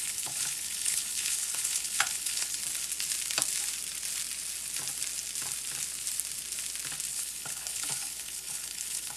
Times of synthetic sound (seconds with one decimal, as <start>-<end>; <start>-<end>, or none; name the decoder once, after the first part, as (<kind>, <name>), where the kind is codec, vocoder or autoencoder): 0.0-2.6 (codec, HILCodec); 7.1-9.2